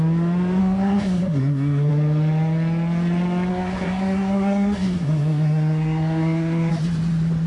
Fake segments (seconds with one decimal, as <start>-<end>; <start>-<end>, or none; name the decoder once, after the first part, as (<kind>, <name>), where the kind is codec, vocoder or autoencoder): 0.6-1.9 (codec, SNAC); 3.5-6.7